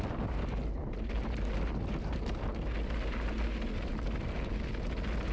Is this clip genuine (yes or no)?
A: yes